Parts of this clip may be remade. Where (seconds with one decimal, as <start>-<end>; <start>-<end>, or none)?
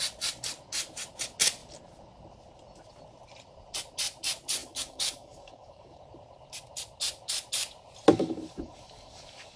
4.6-6.0; 8.1-9.6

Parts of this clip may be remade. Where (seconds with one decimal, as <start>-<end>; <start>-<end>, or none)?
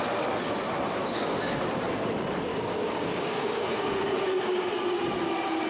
1.0-1.7; 2.5-4.7